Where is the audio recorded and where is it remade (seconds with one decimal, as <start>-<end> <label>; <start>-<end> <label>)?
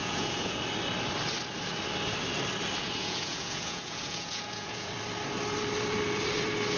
0.0-0.6 remade; 0.6-2.8 recorded; 2.8-4.9 remade; 4.9-6.8 recorded